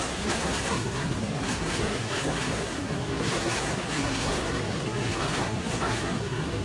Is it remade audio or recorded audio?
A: remade